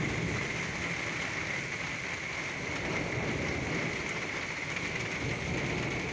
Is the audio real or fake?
real